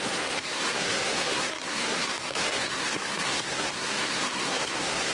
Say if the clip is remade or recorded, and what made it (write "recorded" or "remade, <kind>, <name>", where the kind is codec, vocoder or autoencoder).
remade, codec, SNAC